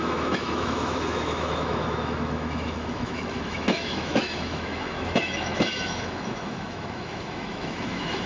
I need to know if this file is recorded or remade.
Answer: remade